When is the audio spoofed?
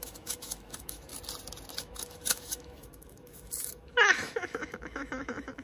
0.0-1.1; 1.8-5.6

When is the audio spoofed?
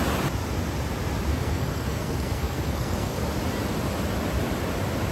1.3-3.2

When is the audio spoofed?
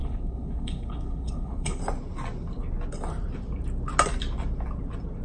0.0-1.8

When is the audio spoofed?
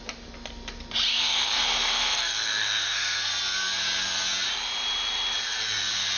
1.1-3.3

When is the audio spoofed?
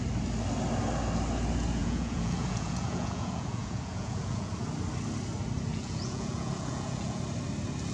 1.8-4.5; 5.7-7.2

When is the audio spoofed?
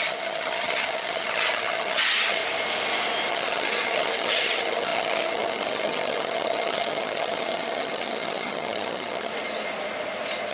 0.0-2.4; 3.3-9.3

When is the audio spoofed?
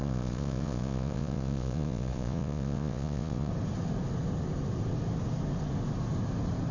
0.0-3.5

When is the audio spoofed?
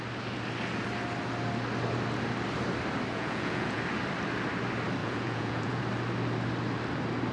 3.1-3.8; 5.0-5.8